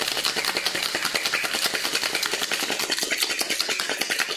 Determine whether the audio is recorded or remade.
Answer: recorded